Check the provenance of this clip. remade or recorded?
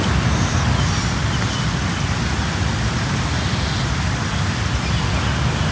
recorded